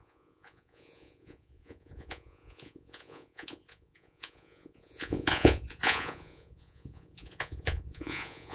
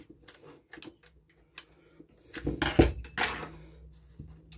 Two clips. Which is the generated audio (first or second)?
first